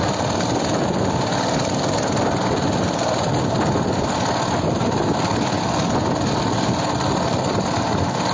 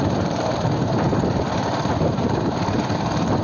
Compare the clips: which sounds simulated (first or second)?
second